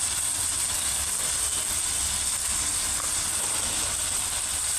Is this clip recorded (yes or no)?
yes